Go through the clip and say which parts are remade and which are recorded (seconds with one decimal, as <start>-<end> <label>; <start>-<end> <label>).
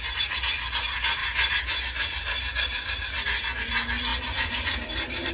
0.0-1.2 recorded; 1.2-3.2 remade; 3.2-4.1 recorded; 4.1-5.3 remade